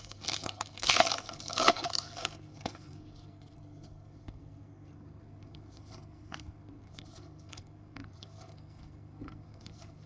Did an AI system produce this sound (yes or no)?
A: yes